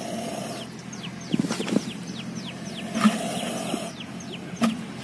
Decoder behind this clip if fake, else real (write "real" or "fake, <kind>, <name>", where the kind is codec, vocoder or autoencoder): real